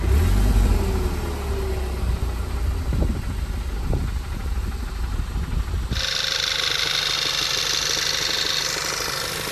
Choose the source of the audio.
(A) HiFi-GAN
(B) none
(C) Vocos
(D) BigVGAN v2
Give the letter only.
B